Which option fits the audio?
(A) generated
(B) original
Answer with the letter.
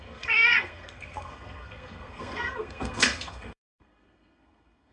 A